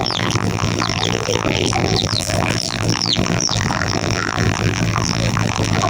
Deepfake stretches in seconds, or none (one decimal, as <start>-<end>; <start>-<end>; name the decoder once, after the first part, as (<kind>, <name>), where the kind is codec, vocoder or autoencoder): 0.0-5.9 (vocoder, BigVGAN v2)